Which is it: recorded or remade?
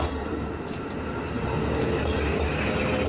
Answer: recorded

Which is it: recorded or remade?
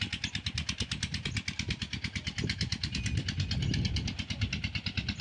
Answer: recorded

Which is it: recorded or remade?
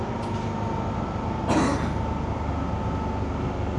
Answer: recorded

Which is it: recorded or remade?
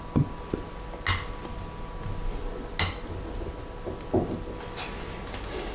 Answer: recorded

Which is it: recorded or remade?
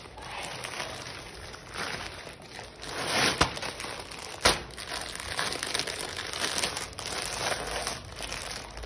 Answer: recorded